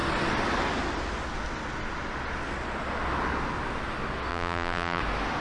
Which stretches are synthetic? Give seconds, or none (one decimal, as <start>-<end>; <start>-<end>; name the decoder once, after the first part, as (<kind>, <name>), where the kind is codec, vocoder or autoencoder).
4.3-5.0 (vocoder, BigVGAN v2)